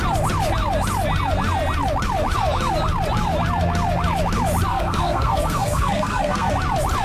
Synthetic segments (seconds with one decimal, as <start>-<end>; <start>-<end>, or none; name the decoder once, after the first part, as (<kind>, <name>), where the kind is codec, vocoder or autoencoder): 4.7-6.5 (codec, SNAC)